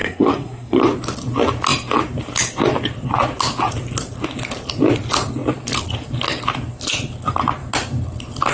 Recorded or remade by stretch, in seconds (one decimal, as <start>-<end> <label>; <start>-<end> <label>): 0.0-0.8 remade; 0.8-8.5 recorded